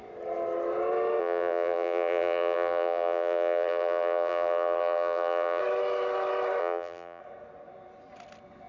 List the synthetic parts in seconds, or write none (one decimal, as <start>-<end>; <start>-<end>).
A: 1.2-5.6; 6.6-7.2

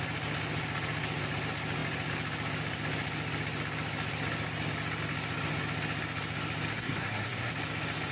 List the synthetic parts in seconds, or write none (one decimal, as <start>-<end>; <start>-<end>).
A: 6.7-7.5

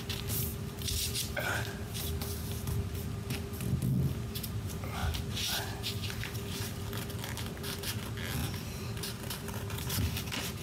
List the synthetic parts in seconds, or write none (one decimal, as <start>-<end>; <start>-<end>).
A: 0.5-2.0; 8.4-9.8

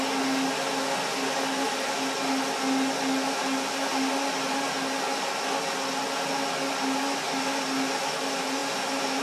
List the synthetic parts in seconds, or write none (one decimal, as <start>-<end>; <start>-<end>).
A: none

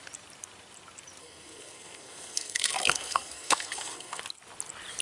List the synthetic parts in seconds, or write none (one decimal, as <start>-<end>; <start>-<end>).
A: 1.2-4.2

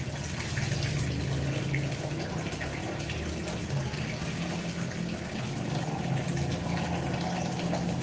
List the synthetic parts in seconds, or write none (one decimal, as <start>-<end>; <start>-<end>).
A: none

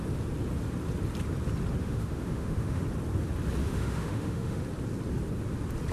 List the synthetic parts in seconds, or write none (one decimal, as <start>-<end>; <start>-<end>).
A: 1.8-2.8; 3.6-4.6

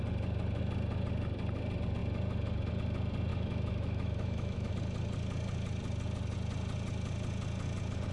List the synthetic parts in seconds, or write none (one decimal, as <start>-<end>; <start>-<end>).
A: 3.3-4.7